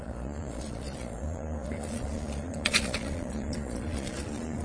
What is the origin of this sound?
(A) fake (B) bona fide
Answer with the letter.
A